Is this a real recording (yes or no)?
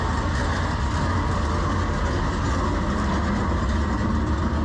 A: yes